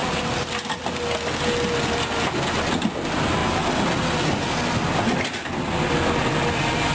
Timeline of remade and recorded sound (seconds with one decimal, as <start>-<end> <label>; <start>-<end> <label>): 0.0-6.9 recorded